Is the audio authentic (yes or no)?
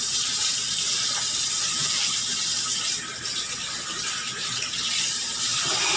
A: no